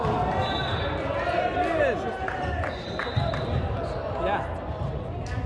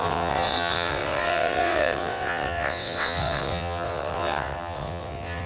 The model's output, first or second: second